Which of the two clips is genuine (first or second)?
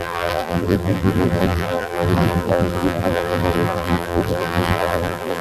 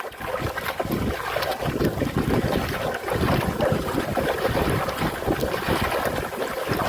second